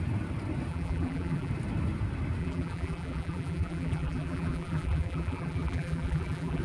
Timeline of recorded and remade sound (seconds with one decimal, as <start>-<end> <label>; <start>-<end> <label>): 0.0-0.7 recorded; 0.7-1.5 remade; 1.5-2.4 recorded; 2.4-6.6 remade